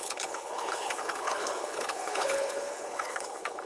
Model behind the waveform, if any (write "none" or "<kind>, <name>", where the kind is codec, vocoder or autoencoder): codec, HILCodec